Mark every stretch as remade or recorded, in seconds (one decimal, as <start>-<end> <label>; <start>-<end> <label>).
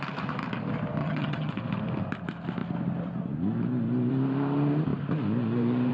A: 0.0-1.0 recorded; 1.0-1.5 remade; 1.5-5.9 recorded